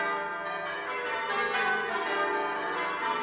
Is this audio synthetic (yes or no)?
no